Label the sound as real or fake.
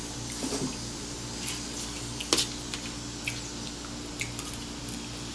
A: real